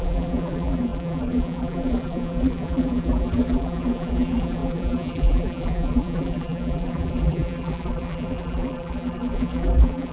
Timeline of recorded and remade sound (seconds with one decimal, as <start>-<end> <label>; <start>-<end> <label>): 0.0-10.1 remade